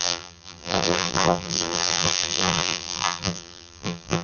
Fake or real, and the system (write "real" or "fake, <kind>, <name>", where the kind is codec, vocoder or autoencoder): fake, vocoder, BigVGAN v2